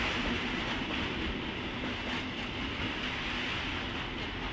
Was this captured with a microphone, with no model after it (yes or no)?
yes